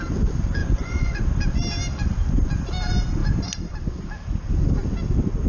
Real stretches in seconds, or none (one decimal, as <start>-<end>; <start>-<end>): 0.0-0.6; 1.2-5.5